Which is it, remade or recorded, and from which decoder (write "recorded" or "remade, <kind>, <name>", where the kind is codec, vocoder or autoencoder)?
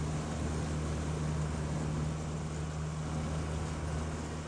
recorded